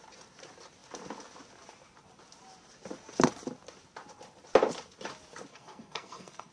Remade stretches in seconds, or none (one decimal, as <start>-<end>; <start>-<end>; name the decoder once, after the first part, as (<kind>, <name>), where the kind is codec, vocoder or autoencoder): 5.5-6.5 (codec, SNAC)

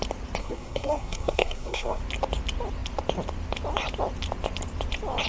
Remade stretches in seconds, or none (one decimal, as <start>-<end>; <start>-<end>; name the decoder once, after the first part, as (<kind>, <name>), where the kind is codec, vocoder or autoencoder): 0.4-2.0 (codec, SNAC)